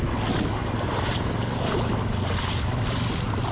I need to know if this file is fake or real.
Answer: real